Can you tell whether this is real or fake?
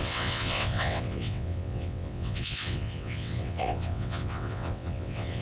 fake